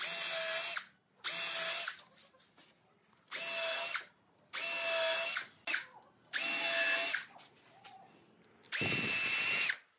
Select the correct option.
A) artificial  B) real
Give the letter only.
B